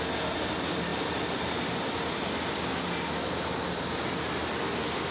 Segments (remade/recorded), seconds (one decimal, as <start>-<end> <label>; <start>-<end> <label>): 0.0-5.1 recorded